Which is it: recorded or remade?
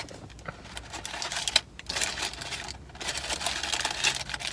recorded